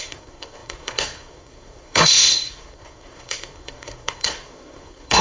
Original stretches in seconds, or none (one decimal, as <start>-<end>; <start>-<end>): none